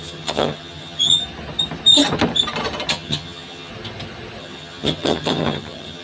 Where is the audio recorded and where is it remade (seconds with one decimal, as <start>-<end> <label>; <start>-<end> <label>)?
0.0-1.2 remade; 1.2-2.9 recorded; 2.9-3.7 remade; 3.7-4.4 recorded; 4.4-6.0 remade